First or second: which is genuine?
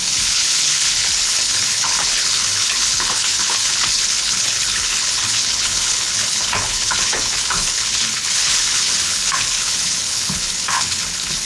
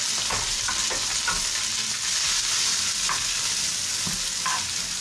second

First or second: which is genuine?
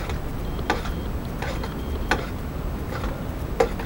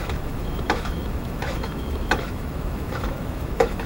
first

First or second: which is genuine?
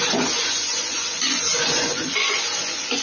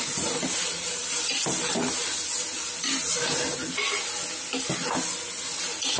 second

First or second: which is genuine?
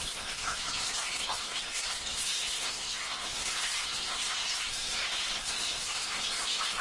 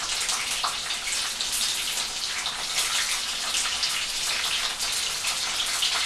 second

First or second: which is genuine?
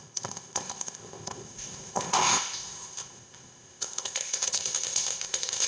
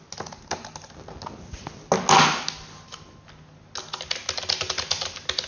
second